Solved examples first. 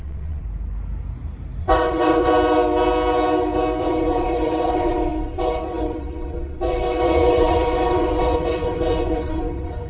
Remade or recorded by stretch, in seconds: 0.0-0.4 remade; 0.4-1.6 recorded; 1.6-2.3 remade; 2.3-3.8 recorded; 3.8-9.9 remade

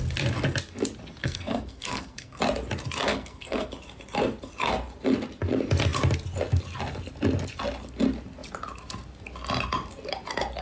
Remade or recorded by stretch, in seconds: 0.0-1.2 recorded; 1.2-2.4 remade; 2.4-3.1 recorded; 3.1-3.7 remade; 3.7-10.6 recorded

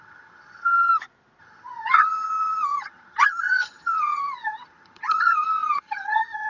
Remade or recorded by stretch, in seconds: 0.0-0.9 remade; 0.9-1.4 recorded; 1.4-6.5 remade

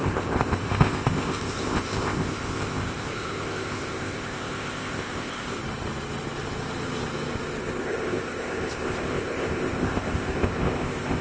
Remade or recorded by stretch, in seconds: 0.0-5.6 remade; 5.6-7.8 recorded; 7.8-11.2 remade

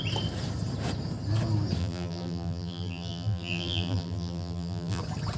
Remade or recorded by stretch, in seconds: 0.0-1.8 recorded; 1.8-5.0 remade; 5.0-5.4 recorded

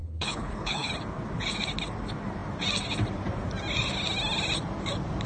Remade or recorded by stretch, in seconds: 0.0-0.9 remade; 0.9-5.3 recorded

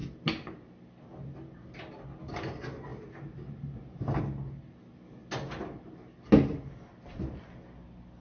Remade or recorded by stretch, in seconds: 0.0-8.2 recorded

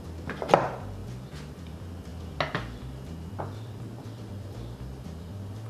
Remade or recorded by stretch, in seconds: 0.0-1.0 remade; 1.0-1.6 recorded; 1.6-2.1 remade; 2.1-3.4 recorded; 3.4-5.7 remade